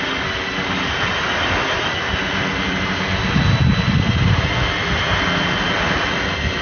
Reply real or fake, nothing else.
real